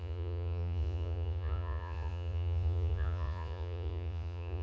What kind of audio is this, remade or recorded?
remade